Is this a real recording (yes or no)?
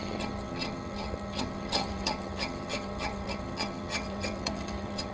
no